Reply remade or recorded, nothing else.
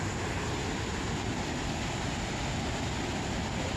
recorded